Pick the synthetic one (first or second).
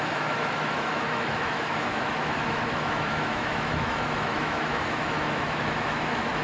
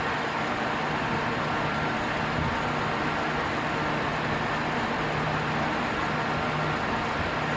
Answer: first